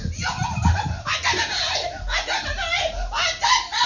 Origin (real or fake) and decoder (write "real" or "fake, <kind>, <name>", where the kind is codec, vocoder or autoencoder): real